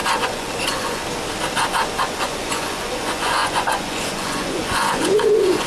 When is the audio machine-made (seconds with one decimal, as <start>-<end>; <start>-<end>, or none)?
0.0-1.0; 2.0-5.7